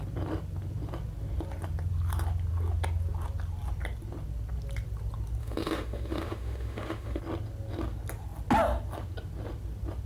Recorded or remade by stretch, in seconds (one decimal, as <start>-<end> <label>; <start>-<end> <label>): 0.0-5.4 recorded; 5.4-7.2 remade; 7.2-10.1 recorded